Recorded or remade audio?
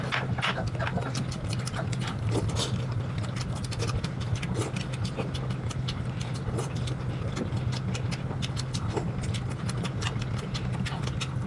recorded